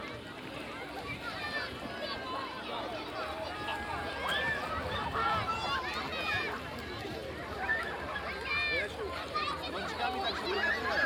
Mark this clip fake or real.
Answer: real